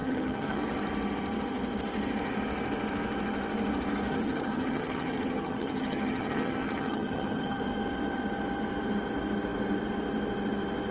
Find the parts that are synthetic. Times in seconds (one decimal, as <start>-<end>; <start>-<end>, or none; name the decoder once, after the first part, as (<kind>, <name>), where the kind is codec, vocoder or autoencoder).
0.0-0.6 (vocoder, HiFi-GAN); 4.1-7.6